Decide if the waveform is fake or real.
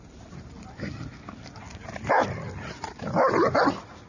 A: real